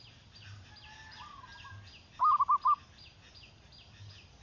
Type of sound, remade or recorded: recorded